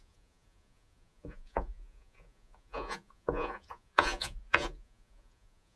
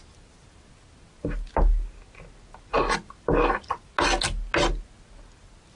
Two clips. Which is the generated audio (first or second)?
first